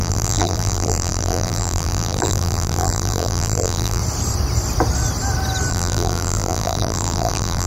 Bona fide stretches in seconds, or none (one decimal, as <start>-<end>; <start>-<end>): 4.0-5.7